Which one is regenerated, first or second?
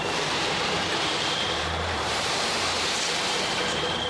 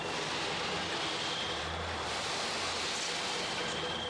first